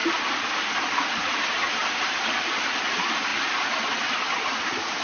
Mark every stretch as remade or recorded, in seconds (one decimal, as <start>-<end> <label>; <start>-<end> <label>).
0.0-5.0 recorded